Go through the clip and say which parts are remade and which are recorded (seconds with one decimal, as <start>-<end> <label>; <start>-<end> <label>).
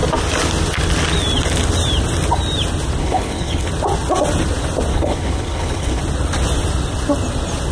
0.0-3.0 recorded; 3.0-3.7 remade; 3.7-4.9 recorded; 4.9-6.0 remade; 6.0-7.7 recorded